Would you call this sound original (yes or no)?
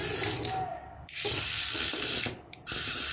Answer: yes